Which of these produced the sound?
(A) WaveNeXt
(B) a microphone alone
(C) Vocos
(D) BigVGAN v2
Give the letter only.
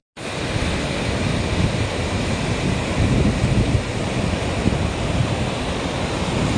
B